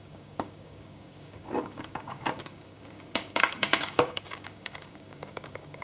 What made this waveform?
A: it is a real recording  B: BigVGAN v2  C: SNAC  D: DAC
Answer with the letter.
D